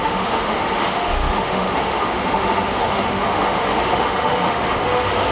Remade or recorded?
remade